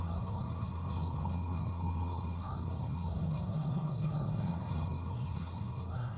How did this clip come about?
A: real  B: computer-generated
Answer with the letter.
B